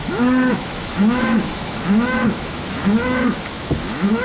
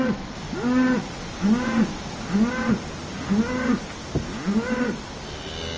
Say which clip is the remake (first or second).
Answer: first